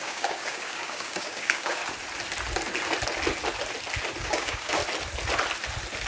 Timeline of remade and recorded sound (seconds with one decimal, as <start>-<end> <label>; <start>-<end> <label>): 0.0-1.8 remade; 1.8-4.2 recorded; 4.2-4.8 remade; 4.8-6.1 recorded